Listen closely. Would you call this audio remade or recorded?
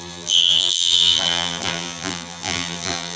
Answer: remade